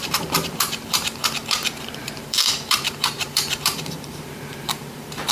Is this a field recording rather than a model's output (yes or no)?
no